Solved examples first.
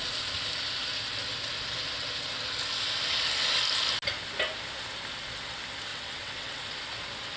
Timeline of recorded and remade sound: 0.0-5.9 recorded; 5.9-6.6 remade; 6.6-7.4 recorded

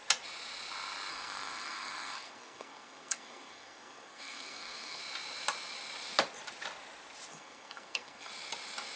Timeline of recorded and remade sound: 0.0-1.1 recorded; 1.1-5.0 remade; 5.0-7.3 recorded; 7.3-8.3 remade; 8.3-9.0 recorded

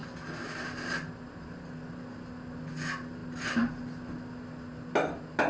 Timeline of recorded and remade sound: 0.0-5.5 recorded

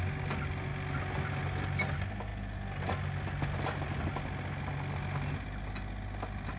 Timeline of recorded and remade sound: 0.0-6.6 recorded

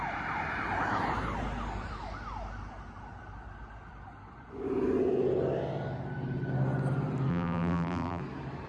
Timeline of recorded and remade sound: 0.0-7.3 recorded; 7.3-8.2 remade; 8.2-8.7 recorded

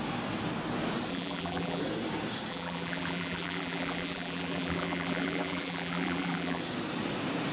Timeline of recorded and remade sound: 0.0-1.1 recorded; 1.1-1.8 remade; 1.8-2.5 recorded; 2.5-6.6 remade; 6.6-7.5 recorded